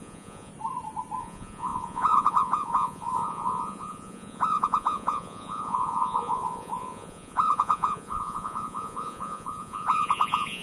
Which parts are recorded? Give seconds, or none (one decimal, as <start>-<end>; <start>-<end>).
0.5-1.2